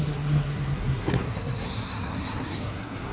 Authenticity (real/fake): fake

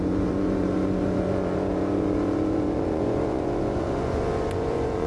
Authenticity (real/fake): fake